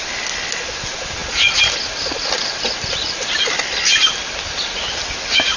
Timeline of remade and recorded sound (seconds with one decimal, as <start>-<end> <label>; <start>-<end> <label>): 0.0-5.6 recorded